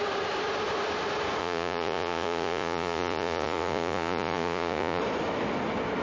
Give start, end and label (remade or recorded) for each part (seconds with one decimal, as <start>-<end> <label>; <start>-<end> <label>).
0.0-1.4 recorded; 1.4-5.0 remade; 5.0-6.0 recorded